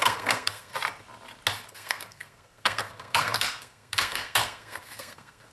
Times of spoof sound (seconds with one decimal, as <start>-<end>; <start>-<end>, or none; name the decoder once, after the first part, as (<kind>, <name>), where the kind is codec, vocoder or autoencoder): 0.0-0.7 (codec, SNAC); 1.7-5.5